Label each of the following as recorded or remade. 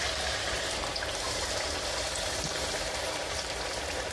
remade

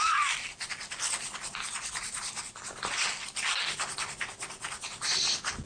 recorded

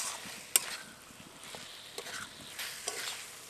recorded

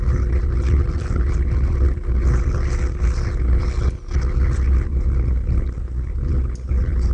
recorded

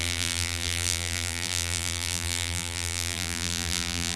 remade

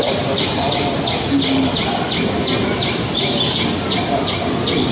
recorded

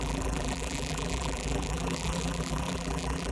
remade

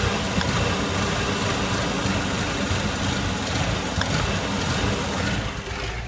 recorded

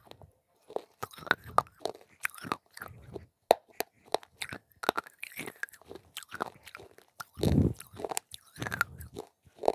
recorded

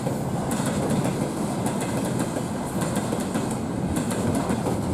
recorded